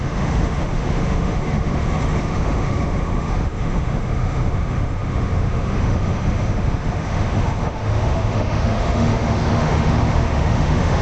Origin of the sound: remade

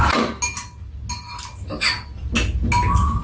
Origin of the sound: recorded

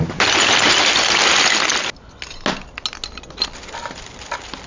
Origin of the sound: recorded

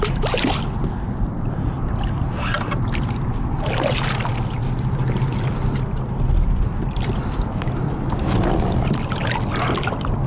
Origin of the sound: recorded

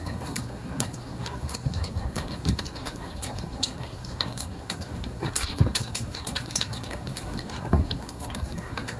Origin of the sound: remade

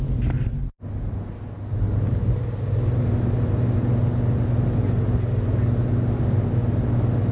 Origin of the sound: recorded